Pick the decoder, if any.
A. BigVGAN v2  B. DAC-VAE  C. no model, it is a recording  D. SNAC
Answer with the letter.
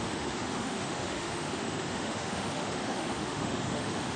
B